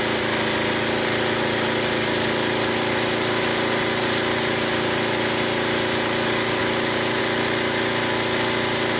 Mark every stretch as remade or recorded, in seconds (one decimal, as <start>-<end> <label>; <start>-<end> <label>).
0.0-9.0 recorded

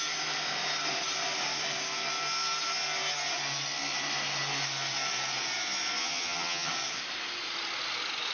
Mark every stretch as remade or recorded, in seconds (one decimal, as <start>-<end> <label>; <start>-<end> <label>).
0.0-6.0 recorded; 6.0-6.7 remade; 6.7-8.3 recorded

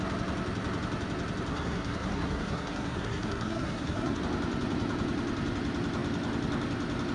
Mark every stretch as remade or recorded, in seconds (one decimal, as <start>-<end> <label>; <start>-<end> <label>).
0.0-1.5 recorded; 1.5-4.2 remade; 4.2-7.1 recorded

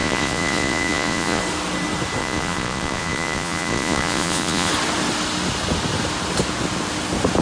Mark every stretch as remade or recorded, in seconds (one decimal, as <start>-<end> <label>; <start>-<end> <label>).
0.0-1.4 remade; 1.4-2.2 recorded; 2.2-4.7 remade; 4.7-7.4 recorded

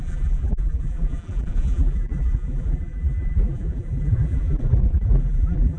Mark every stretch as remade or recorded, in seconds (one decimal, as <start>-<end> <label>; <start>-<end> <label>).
0.0-5.8 remade

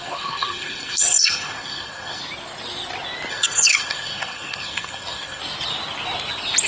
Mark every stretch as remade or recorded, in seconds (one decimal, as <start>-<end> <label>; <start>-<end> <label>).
0.0-2.2 remade; 2.2-3.3 recorded; 3.3-5.4 remade; 5.4-6.7 recorded

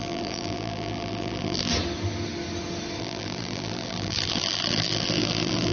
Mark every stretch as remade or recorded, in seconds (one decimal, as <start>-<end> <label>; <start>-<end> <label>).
0.0-1.7 remade; 1.7-3.0 recorded; 3.0-5.7 remade